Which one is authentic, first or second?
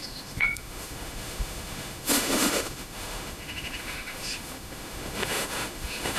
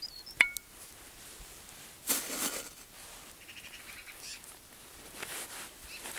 second